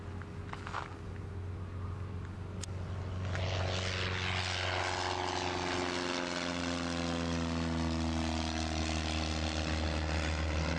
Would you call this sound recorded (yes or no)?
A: yes